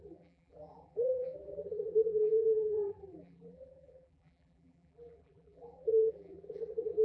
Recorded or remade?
remade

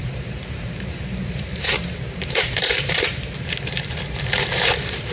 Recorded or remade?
remade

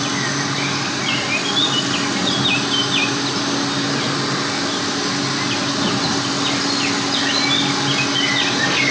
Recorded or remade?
recorded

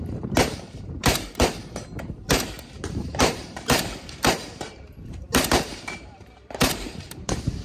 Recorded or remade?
remade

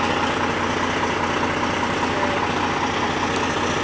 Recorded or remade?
recorded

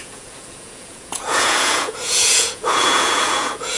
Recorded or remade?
remade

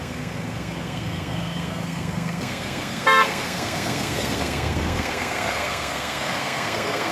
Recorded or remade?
remade